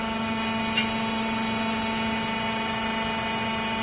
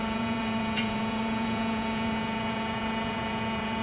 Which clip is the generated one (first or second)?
second